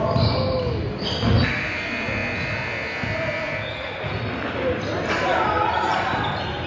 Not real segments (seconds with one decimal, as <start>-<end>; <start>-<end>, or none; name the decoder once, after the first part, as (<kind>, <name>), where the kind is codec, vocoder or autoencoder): none